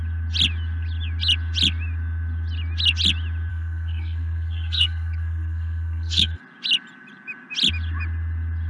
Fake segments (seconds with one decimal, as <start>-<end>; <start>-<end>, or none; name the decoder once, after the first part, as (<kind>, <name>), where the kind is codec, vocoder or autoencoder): 3.5-6.4 (codec, SNAC)

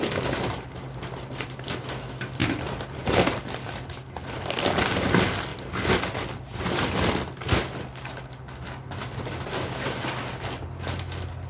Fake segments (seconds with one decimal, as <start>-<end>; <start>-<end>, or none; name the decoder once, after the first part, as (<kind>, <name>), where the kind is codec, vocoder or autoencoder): 2.4-3.6 (vocoder, BigVGAN v2)

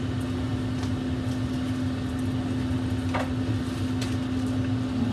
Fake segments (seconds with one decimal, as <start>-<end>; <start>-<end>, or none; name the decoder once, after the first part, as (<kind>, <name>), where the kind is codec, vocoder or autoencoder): none